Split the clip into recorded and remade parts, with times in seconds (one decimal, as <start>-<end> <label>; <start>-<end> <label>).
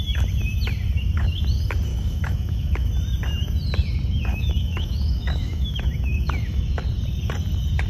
0.0-1.9 recorded; 1.9-2.9 remade; 2.9-4.3 recorded; 4.3-6.6 remade; 6.6-7.9 recorded